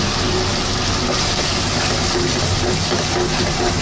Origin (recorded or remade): recorded